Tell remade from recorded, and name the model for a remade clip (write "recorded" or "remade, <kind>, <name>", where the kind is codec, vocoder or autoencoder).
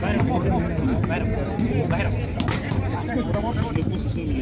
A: recorded